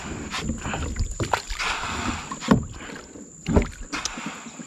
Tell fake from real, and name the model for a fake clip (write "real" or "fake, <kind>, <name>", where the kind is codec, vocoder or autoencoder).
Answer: real